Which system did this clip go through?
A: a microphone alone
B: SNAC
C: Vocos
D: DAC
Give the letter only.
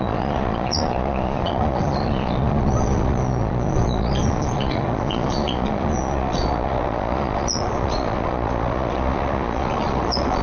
C